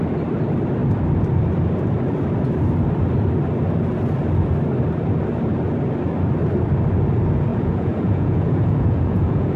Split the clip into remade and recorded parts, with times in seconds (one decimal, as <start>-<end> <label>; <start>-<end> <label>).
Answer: 0.0-7.5 recorded; 7.5-9.6 remade

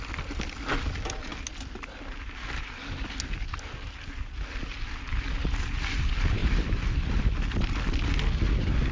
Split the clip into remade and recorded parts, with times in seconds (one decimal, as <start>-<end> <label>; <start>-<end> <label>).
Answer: 0.0-8.9 recorded

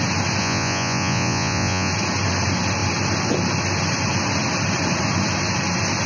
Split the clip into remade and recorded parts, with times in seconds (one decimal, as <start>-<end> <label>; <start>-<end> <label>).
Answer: 0.0-0.4 recorded; 0.4-1.9 remade; 1.9-6.1 recorded

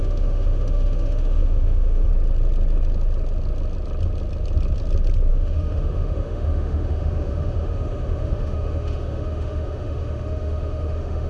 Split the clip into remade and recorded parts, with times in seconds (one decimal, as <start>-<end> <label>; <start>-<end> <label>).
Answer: 0.0-2.1 remade; 2.1-5.3 recorded; 5.3-11.3 remade

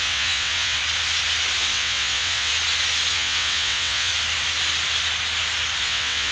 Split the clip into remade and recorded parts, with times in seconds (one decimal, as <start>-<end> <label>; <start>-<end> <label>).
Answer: 0.0-0.8 remade; 0.8-1.6 recorded; 1.6-2.5 remade; 2.5-3.1 recorded; 3.1-4.1 remade; 4.1-5.8 recorded; 5.8-6.3 remade

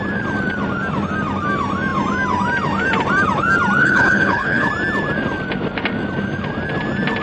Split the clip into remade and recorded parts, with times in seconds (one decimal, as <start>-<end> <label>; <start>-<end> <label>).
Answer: 0.0-3.8 recorded; 3.8-4.7 remade; 4.7-7.2 recorded

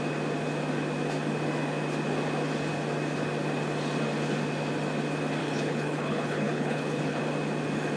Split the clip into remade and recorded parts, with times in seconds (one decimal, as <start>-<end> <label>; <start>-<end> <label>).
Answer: 0.0-5.4 recorded; 5.4-7.2 remade; 7.2-8.0 recorded